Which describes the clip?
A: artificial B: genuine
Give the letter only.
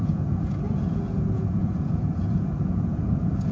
A